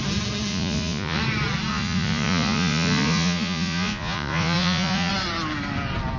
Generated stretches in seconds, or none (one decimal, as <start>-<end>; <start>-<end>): 0.5-1.2; 1.7-5.1